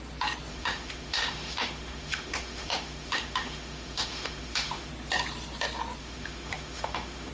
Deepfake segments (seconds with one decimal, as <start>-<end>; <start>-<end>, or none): 0.5-4.9; 6.0-7.3